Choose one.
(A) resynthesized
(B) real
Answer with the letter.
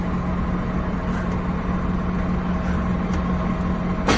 B